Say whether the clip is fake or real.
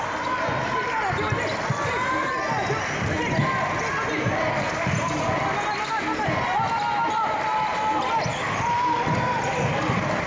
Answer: real